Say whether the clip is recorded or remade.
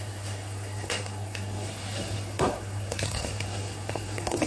remade